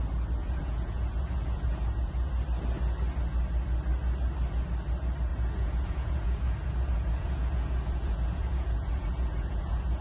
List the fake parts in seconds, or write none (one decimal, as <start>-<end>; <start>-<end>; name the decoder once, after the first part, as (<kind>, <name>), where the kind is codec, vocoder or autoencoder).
0.4-2.3 (vocoder, Vocos); 5.3-10.0